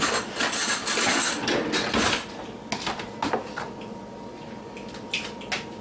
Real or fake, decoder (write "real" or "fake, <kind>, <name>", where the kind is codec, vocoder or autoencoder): real